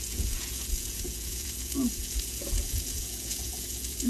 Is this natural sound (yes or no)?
no